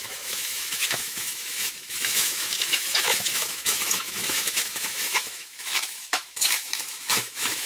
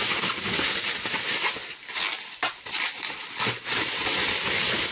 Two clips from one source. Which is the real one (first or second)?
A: second